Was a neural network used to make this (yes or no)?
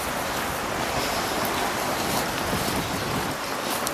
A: no